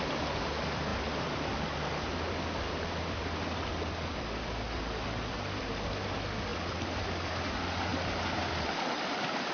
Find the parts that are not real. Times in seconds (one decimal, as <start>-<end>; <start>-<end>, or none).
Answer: none